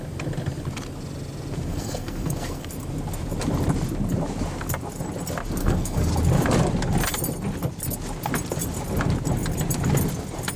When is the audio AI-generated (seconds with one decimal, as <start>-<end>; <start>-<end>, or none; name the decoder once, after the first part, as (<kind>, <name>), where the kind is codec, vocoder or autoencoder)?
1.7-2.7 (codec, SNAC); 5.6-6.1